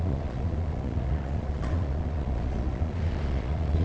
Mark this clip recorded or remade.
remade